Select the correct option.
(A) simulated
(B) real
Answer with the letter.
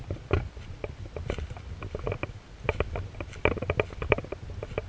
B